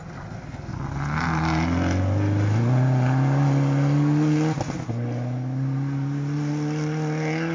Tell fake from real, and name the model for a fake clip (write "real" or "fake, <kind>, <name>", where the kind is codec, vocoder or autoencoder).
real